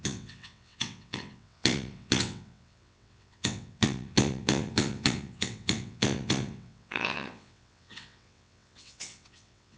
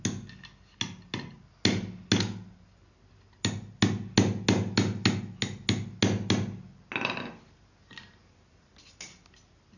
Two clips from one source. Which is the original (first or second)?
second